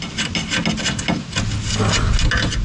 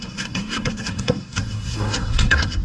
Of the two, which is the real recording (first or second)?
first